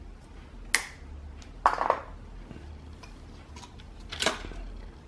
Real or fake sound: real